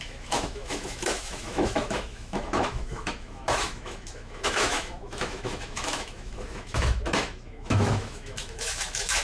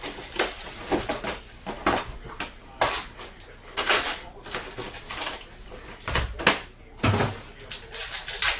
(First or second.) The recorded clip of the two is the second